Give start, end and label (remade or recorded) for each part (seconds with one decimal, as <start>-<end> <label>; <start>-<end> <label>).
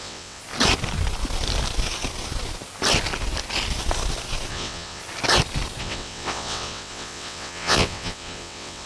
0.0-0.4 remade; 0.4-4.5 recorded; 4.5-5.0 remade; 5.0-5.8 recorded; 5.8-8.9 remade